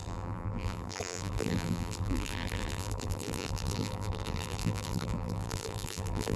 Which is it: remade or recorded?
remade